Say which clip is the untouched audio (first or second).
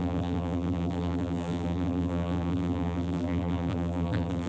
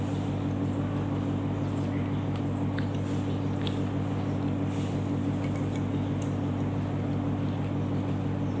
second